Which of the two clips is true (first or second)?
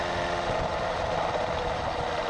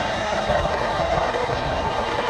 first